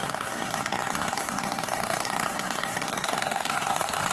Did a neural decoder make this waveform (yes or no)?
yes